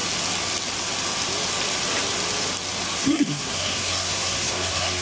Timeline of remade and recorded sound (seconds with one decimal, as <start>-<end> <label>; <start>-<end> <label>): 0.0-3.0 recorded; 3.0-5.0 remade